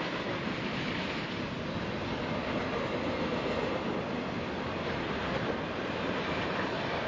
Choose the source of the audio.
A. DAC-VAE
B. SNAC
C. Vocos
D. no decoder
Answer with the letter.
D